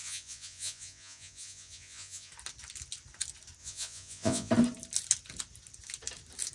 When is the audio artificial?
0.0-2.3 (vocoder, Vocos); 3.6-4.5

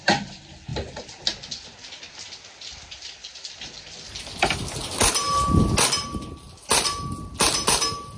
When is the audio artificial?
none

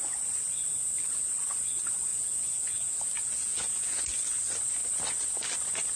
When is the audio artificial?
2.1-4.0 (vocoder, Vocos)